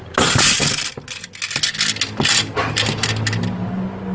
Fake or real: real